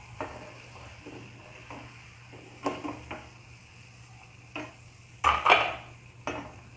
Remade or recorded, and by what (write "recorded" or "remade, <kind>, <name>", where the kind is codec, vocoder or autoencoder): recorded